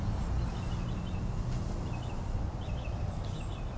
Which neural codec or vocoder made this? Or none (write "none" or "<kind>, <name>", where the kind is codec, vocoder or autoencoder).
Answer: none